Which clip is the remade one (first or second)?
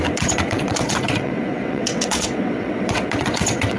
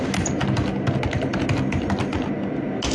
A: first